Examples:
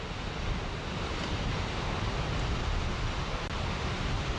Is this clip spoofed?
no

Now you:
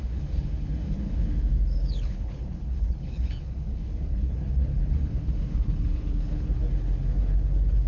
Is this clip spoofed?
yes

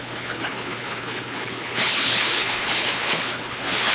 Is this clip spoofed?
yes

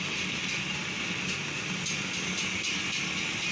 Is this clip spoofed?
no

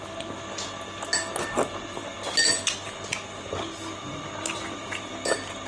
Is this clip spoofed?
no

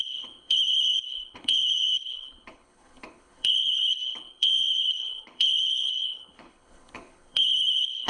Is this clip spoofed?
yes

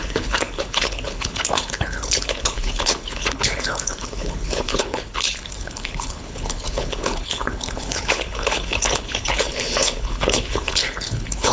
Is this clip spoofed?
yes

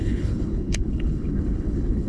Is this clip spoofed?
yes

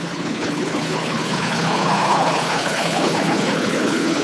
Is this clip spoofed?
yes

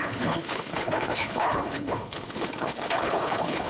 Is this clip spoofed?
yes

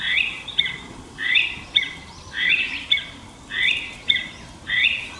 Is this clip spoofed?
no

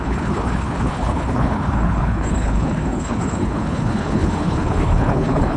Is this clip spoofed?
yes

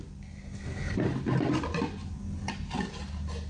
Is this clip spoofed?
no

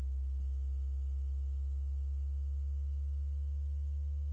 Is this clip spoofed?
no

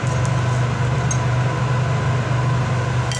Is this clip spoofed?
no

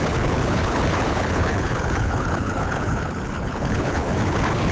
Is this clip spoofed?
yes